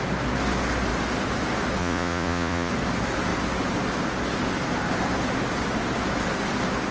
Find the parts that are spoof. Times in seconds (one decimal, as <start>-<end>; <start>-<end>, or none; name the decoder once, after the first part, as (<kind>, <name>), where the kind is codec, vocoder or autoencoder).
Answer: 1.8-2.7 (vocoder, Vocos)